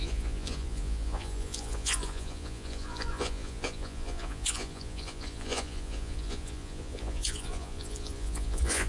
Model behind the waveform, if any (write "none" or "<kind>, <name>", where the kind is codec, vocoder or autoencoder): vocoder, Vocos